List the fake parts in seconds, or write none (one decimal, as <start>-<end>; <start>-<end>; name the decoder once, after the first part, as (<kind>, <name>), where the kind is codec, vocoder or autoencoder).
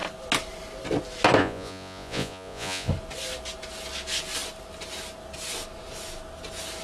1.4-2.9 (vocoder, Vocos)